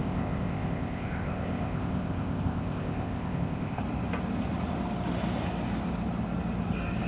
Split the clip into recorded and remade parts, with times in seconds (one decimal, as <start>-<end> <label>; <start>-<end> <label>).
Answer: 0.0-3.8 remade; 3.8-7.1 recorded